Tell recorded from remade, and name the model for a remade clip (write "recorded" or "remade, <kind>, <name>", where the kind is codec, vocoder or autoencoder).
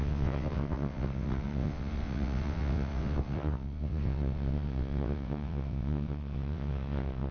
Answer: remade, vocoder, WaveNeXt